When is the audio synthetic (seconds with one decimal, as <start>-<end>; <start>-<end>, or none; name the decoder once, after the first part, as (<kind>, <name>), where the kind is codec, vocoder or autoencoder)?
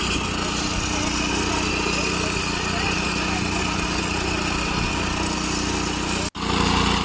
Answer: none